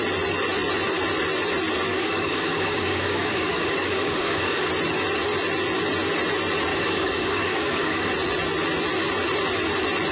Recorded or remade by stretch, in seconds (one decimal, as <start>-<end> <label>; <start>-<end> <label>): 0.0-1.9 recorded; 1.9-4.7 remade; 4.7-6.7 recorded; 6.7-8.1 remade; 8.1-10.1 recorded